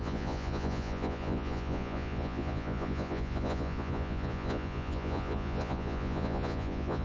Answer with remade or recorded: remade